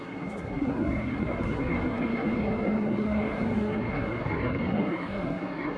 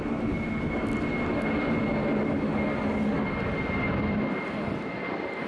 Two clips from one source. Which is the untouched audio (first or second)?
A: second